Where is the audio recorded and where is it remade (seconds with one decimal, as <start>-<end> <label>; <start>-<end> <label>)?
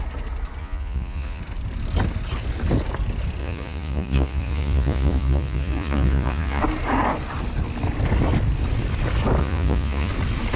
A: 0.0-0.6 recorded; 0.6-1.4 remade; 1.4-3.4 recorded; 3.4-6.6 remade; 6.6-9.4 recorded; 9.4-10.1 remade; 10.1-10.6 recorded